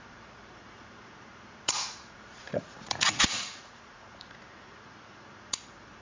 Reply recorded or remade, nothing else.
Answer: remade